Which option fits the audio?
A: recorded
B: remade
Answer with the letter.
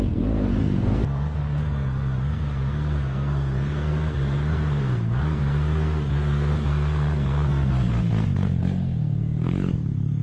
B